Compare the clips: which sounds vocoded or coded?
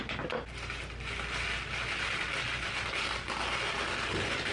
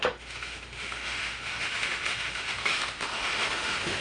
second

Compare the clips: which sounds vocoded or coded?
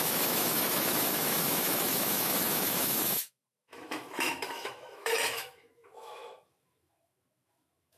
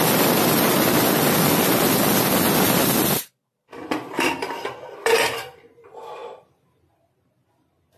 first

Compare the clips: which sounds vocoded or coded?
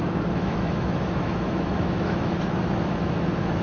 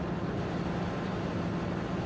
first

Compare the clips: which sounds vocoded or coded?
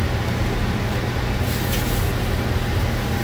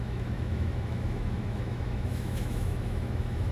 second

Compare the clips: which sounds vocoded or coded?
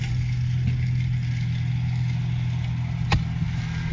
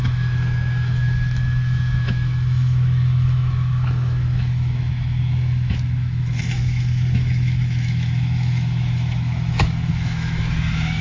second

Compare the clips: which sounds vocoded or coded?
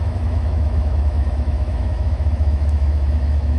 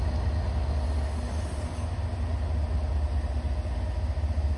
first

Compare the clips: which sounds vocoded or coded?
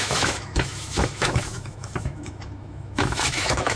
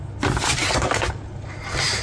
first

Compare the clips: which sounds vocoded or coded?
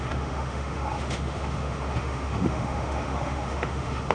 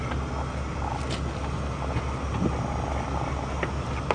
first